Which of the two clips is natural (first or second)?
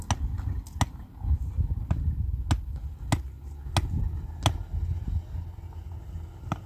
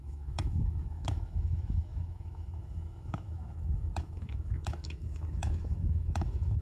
first